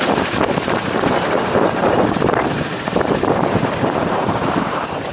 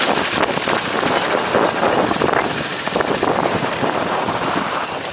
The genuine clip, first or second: second